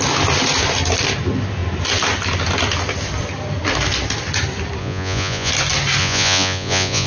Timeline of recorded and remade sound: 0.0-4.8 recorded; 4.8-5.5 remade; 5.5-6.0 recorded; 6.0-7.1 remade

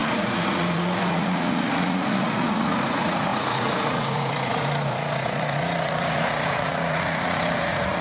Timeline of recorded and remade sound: 0.0-8.0 remade